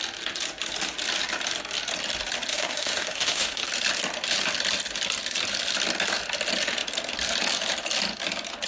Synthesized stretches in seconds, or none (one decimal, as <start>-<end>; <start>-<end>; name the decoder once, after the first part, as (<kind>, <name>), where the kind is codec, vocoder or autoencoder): 2.5-3.7 (autoencoder, DAC-VAE)